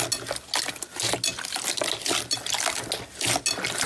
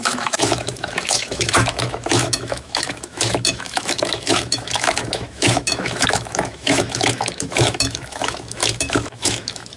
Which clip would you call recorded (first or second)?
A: first